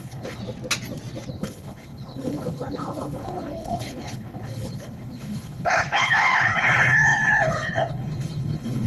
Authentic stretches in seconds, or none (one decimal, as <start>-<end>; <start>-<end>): 0.4-1.3

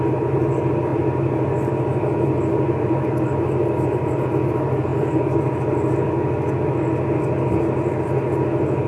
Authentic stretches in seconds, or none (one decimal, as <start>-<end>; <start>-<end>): 0.0-8.9

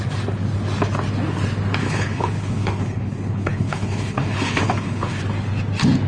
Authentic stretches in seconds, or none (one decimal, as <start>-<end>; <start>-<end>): 0.0-1.8; 5.2-6.1

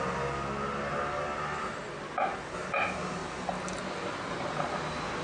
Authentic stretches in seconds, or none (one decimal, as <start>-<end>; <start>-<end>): 0.0-5.2

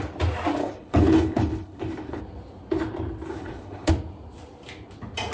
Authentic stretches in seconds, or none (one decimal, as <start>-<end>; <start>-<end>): 0.0-0.6; 2.2-3.3; 3.9-5.3

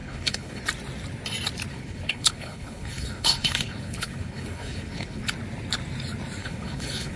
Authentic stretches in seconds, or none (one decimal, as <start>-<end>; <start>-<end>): 0.6-1.7; 5.2-6.4

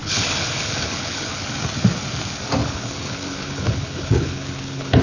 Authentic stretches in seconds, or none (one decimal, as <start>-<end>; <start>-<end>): 1.4-2.6